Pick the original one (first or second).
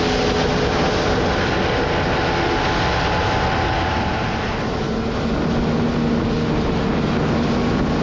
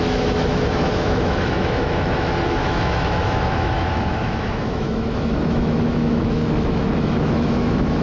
first